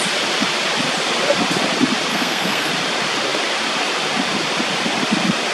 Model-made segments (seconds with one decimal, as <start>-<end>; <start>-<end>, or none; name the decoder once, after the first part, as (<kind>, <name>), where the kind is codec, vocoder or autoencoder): 2.1-2.7 (codec, SNAC)